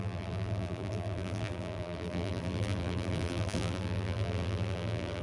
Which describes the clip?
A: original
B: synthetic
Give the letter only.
B